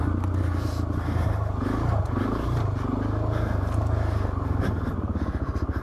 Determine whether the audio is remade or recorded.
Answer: recorded